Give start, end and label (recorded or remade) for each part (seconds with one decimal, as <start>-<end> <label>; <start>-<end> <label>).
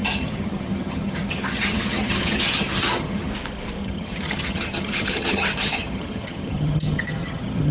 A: 0.0-3.3 remade; 3.3-3.8 recorded; 3.8-7.7 remade